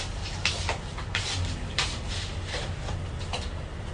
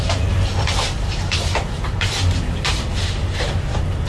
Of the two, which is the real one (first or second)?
first